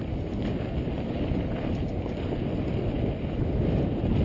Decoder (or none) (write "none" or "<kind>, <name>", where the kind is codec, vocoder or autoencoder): none